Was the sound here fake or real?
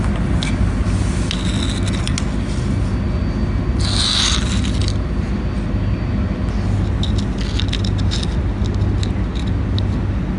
real